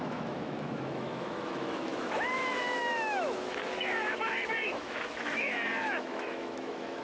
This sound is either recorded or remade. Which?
remade